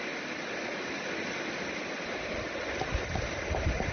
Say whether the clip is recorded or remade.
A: recorded